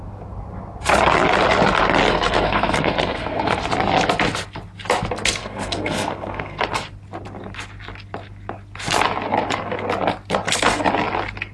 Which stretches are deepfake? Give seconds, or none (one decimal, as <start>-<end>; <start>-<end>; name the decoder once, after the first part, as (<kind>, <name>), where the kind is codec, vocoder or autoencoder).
2.1-3.6 (codec, SNAC); 5.4-6.6